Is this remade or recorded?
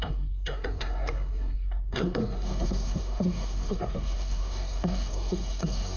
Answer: remade